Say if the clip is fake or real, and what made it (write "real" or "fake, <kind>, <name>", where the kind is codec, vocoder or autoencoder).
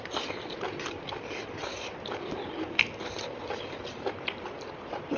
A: real